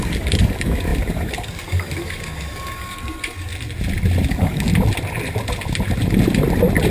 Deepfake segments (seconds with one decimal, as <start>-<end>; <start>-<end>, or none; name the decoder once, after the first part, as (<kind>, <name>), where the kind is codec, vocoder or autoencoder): 0.0-3.5 (codec, DAC); 4.3-4.7